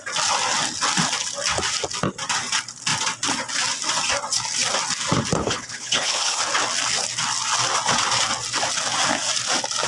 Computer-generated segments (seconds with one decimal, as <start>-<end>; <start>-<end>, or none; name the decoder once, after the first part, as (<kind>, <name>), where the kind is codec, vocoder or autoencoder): 5.4-6.4 (codec, HILCodec)